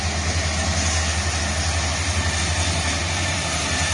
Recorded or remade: recorded